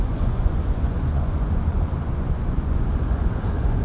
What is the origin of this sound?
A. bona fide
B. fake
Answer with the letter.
B